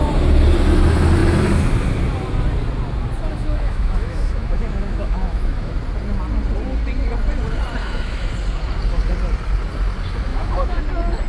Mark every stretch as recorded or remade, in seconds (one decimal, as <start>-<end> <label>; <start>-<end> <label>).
0.0-3.3 recorded; 3.3-5.7 remade; 5.7-7.8 recorded; 7.8-8.3 remade; 8.3-10.3 recorded; 10.3-10.8 remade; 10.8-11.3 recorded